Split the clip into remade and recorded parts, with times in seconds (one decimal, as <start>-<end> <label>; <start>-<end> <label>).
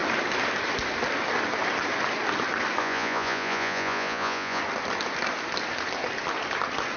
0.0-2.8 recorded; 2.8-4.6 remade; 4.6-7.0 recorded